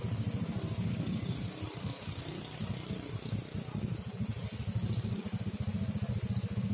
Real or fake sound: real